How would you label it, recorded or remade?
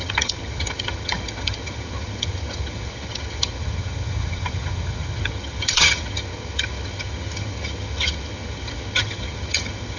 remade